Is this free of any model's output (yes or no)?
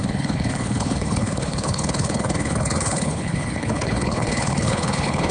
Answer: no